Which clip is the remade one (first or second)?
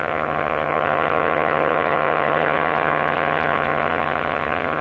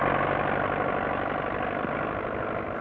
first